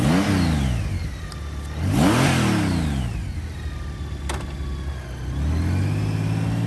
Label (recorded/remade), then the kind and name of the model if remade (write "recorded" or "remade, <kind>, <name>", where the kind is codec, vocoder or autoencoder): recorded